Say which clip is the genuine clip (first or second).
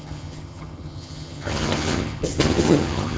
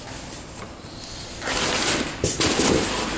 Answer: second